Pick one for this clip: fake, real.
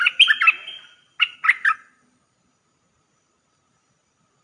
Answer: real